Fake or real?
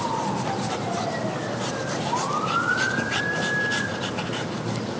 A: fake